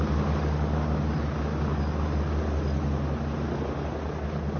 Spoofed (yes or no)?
no